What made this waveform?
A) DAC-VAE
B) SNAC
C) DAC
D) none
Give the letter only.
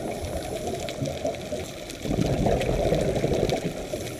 D